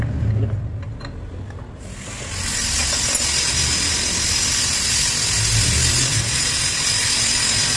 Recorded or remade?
recorded